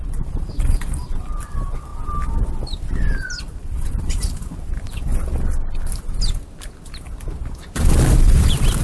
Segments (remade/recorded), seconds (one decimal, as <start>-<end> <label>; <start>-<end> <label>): 0.0-1.9 remade; 1.9-3.4 recorded; 3.4-5.1 remade; 5.1-8.1 recorded; 8.1-8.8 remade